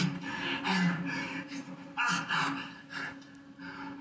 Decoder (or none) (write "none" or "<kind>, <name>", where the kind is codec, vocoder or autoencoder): none